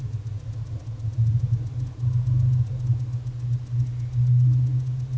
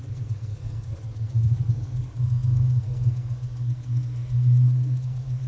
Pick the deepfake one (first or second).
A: second